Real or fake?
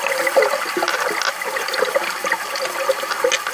real